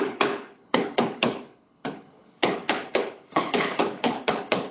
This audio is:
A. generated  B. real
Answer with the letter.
A